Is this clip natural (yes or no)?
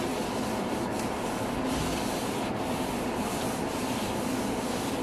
no